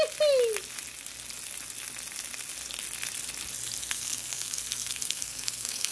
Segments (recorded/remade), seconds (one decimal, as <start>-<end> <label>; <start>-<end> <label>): 0.0-3.8 recorded; 3.8-5.9 remade